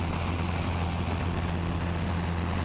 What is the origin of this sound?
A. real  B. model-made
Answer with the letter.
A